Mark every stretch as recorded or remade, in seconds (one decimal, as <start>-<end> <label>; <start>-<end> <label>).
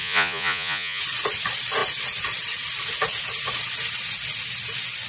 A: 0.0-1.0 remade; 1.0-5.1 recorded